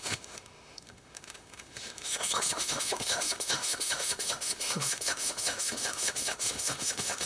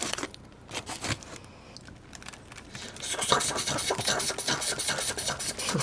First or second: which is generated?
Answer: first